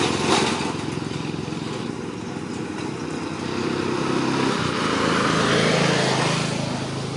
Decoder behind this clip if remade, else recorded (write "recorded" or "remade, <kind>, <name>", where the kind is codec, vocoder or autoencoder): recorded